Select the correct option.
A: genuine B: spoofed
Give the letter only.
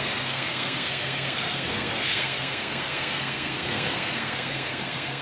B